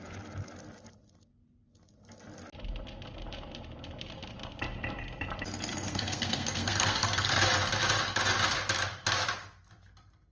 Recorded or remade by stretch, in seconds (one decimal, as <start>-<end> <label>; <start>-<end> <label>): 0.0-5.7 recorded; 5.7-7.4 remade; 7.4-10.3 recorded